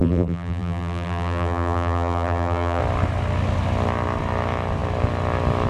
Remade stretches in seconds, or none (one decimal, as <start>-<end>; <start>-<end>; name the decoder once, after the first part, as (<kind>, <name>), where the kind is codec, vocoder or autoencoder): 0.0-2.8 (vocoder, BigVGAN v2)